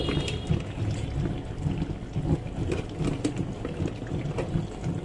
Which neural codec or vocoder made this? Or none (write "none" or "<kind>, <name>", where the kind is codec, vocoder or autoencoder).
none